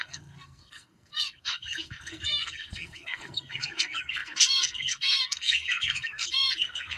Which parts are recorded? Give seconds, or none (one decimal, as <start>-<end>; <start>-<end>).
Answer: none